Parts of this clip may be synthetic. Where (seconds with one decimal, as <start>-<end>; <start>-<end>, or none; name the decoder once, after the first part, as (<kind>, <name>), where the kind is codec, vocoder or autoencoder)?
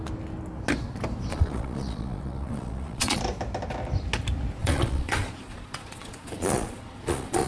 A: 1.3-3.2 (vocoder, Vocos); 4.6-7.5